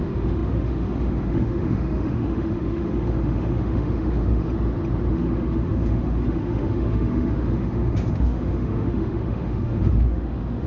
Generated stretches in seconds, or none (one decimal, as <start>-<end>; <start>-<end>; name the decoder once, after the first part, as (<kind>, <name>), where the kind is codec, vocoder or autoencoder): 0.0-4.5 (autoencoder, DAC-VAE); 5.1-10.7